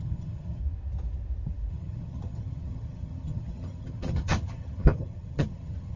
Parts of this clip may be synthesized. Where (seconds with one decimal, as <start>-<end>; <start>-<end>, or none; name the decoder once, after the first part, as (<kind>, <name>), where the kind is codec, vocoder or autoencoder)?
0.0-0.6 (vocoder, HiFi-GAN); 1.7-6.0